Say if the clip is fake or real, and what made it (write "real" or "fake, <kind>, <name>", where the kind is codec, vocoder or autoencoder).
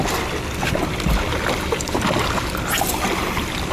real